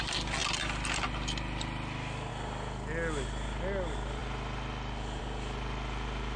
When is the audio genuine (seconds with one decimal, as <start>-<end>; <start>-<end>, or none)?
0.0-6.4